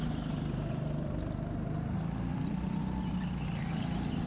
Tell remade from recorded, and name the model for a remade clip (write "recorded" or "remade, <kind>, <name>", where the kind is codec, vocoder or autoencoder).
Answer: recorded